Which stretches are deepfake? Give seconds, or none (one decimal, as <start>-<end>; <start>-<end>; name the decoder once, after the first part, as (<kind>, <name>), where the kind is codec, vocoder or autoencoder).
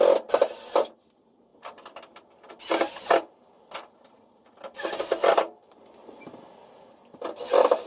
none